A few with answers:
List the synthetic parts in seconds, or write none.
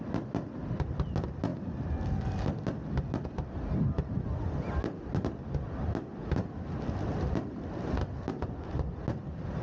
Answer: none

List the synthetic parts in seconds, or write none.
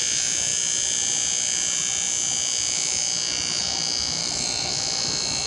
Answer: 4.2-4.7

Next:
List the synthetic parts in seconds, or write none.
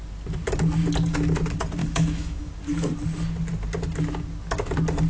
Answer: 1.8-2.5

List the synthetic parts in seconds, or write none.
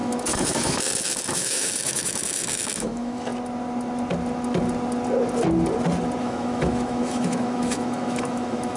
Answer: 0.0-3.3; 6.2-8.8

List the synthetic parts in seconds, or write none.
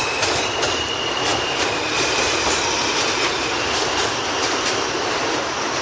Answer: none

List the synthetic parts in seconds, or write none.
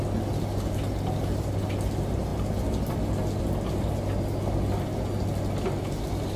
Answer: none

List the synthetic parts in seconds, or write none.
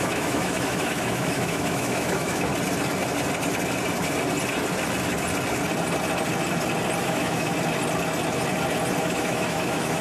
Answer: 0.0-2.5; 7.0-7.5; 9.0-10.0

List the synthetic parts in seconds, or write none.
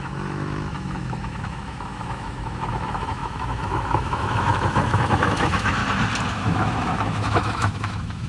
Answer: 0.0-5.8; 6.3-8.3